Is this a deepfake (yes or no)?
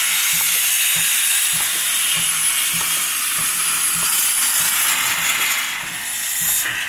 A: no